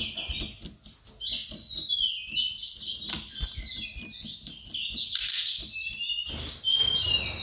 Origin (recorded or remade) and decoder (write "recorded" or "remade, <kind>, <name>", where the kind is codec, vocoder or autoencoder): recorded